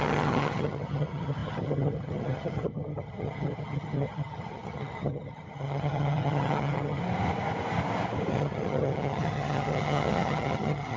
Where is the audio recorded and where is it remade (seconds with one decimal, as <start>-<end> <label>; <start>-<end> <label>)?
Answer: 0.0-7.0 remade; 7.0-8.3 recorded; 8.3-11.0 remade